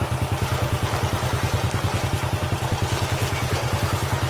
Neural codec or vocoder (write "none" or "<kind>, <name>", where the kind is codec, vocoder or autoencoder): none